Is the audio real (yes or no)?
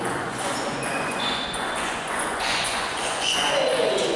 no